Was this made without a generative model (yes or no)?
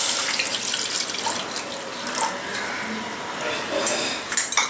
yes